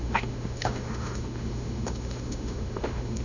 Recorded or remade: remade